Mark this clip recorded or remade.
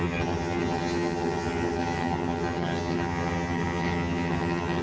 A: remade